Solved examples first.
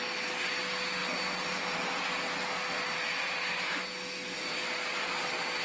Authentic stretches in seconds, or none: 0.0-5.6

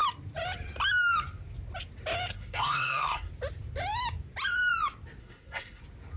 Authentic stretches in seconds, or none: 0.0-2.3; 3.3-5.2; 5.8-6.2

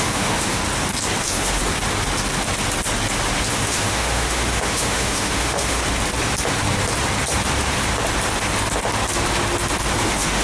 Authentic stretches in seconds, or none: 0.6-1.2; 1.6-3.5; 5.8-10.0

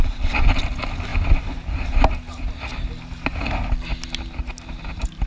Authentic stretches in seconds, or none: 0.0-5.3

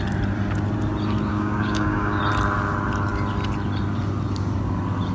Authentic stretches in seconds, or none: 0.0-1.3; 2.2-5.1

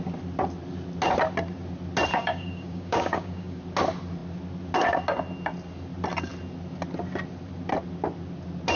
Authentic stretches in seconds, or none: 0.0-2.1; 3.6-8.8

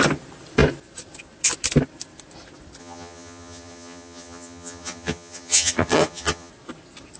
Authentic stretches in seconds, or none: 0.0-2.8; 6.5-7.2